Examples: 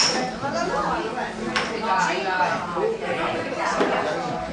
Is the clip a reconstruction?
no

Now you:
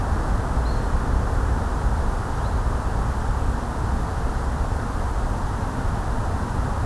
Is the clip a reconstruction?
no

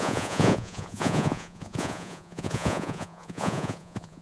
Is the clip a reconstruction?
yes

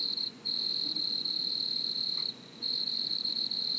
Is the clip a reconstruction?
yes